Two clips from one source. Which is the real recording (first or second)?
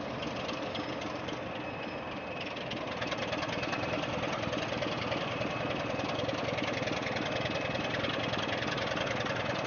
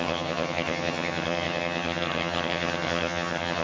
first